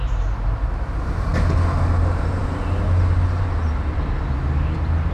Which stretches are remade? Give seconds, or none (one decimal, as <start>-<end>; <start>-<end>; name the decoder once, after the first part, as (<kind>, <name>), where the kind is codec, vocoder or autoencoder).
none